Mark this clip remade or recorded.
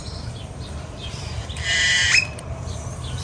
remade